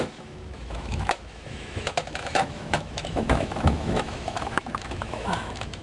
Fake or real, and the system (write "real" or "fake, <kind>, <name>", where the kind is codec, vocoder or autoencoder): fake, autoencoder, DAC-VAE